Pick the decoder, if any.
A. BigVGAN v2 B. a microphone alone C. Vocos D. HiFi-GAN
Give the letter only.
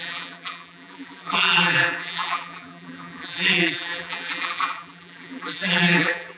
A